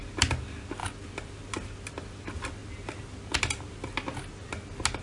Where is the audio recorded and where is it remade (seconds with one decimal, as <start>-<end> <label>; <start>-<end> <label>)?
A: 0.0-5.0 recorded